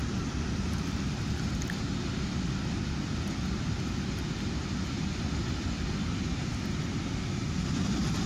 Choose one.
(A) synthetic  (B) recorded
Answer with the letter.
B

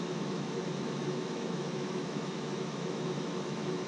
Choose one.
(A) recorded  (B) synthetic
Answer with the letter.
B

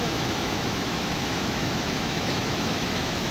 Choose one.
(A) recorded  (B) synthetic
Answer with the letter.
B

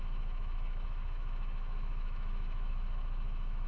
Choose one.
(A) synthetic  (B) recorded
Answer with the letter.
A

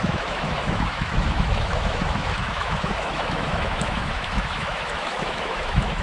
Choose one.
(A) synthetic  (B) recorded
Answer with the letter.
A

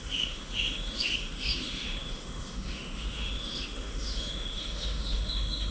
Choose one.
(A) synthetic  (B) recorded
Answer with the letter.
A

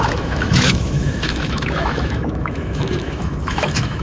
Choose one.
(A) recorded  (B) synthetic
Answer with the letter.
B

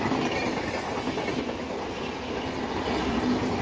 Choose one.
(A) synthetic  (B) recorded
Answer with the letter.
B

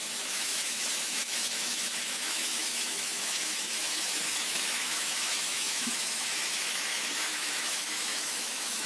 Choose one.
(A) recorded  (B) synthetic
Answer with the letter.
B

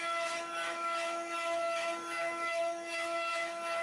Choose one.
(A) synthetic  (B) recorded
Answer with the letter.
A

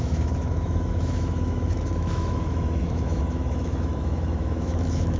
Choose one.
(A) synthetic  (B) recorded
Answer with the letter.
A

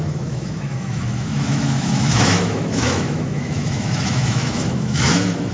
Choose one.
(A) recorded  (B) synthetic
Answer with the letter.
B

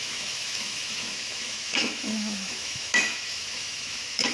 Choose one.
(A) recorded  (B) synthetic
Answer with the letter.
B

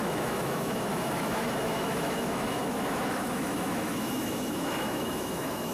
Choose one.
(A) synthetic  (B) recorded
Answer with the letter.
A